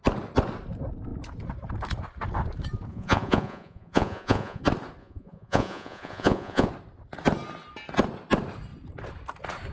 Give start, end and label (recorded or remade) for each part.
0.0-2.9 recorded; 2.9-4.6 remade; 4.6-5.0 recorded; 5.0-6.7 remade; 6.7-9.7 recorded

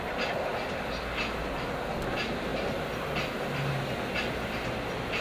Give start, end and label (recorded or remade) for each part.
0.0-5.2 recorded

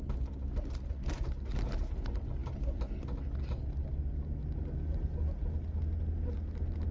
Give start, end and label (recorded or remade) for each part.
0.0-6.9 recorded